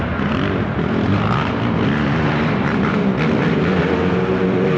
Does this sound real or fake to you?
real